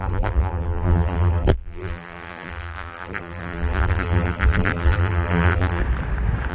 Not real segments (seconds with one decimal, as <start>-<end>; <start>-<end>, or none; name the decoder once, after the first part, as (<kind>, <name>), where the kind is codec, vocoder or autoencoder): 0.0-5.8 (vocoder, BigVGAN v2)